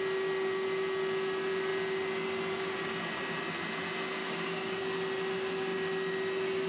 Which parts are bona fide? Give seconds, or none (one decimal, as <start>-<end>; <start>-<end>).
0.0-4.2; 4.8-6.7

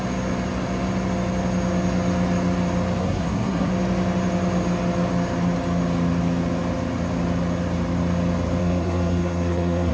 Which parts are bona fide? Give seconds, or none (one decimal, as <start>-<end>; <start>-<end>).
0.0-3.0; 3.7-8.6

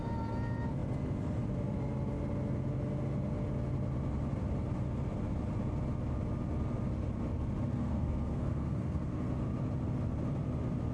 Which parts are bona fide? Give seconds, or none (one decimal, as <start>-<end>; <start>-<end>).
0.0-7.7; 9.3-10.9

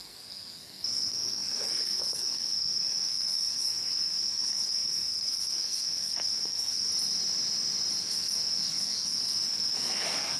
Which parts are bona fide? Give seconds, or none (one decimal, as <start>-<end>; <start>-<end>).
6.9-8.0

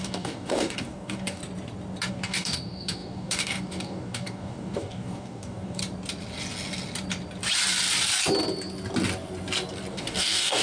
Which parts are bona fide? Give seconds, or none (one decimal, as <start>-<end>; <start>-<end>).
1.4-2.1; 5.8-9.9

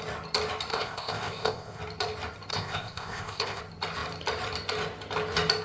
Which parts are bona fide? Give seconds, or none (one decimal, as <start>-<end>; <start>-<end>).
0.0-0.7; 1.8-2.5; 3.6-5.6